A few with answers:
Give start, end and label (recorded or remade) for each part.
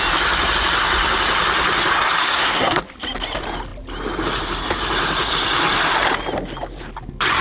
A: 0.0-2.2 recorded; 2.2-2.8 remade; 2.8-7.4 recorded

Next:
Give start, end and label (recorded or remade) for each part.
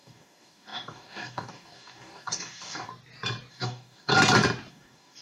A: 0.0-2.9 remade; 2.9-3.5 recorded; 3.5-4.1 remade; 4.1-4.7 recorded; 4.7-5.2 remade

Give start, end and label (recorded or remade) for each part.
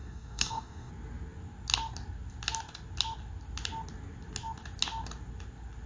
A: 0.0-0.9 remade; 0.9-5.9 recorded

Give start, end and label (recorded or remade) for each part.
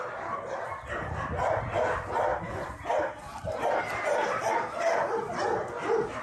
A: 0.0-2.3 recorded; 2.3-4.5 remade; 4.5-6.2 recorded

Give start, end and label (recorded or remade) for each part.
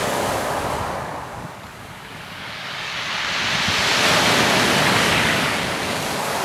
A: 0.0-2.9 remade; 2.9-4.8 recorded; 4.8-6.4 remade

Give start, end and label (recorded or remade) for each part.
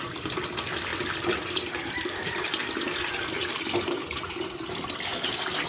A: 0.0-5.7 recorded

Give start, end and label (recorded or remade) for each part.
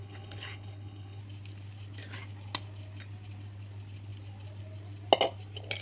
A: 0.0-1.2 remade; 1.2-5.8 recorded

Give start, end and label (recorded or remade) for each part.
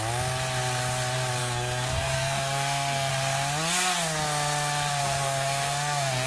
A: 0.0-1.4 recorded; 1.4-3.1 remade; 3.1-5.0 recorded; 5.0-6.3 remade